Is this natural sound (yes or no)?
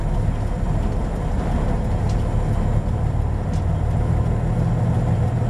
yes